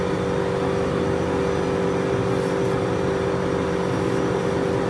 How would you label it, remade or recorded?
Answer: recorded